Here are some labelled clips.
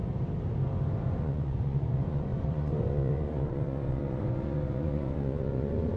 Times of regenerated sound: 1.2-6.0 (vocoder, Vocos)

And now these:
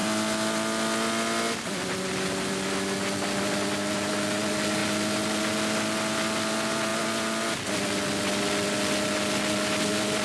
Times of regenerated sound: none